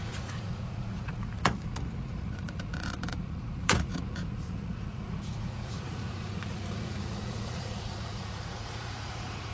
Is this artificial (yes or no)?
yes